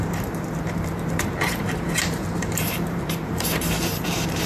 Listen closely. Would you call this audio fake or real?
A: fake